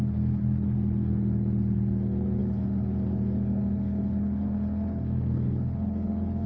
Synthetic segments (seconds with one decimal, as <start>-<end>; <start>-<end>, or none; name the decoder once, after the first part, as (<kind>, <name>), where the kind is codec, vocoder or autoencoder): 0.0-6.5 (codec, HILCodec)